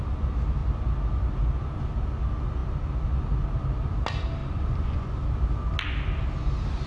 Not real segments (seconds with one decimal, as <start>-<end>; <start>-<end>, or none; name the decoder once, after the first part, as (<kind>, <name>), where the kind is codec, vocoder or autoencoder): 4.4-5.1 (vocoder, Vocos)